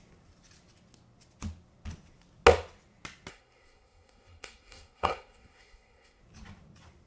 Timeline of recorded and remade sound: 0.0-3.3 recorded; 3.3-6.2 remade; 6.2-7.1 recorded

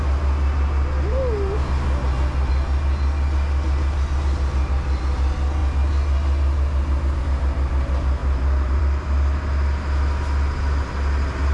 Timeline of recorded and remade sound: 0.0-11.5 recorded

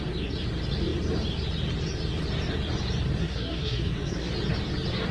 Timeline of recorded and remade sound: 0.0-3.2 recorded; 3.2-4.3 remade; 4.3-5.1 recorded

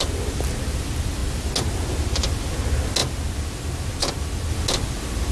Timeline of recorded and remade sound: 0.0-5.3 recorded

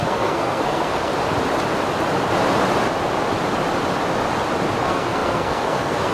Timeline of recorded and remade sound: 0.0-1.1 remade; 1.1-4.8 recorded; 4.8-6.1 remade

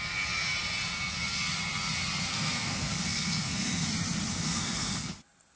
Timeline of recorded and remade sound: 0.0-2.3 recorded; 2.3-3.9 remade; 3.9-4.3 recorded; 4.3-5.1 remade; 5.1-5.6 recorded